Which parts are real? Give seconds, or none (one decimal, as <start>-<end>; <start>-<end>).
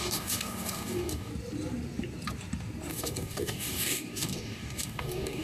1.3-2.9